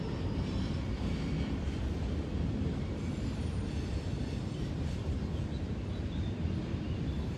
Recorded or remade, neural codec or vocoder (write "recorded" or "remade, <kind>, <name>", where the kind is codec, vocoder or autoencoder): recorded